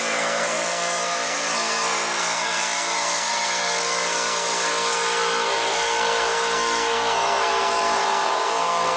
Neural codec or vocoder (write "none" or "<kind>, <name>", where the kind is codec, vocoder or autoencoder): codec, SNAC